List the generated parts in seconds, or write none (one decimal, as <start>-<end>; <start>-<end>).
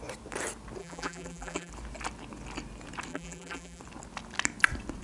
0.8-1.7; 3.1-3.8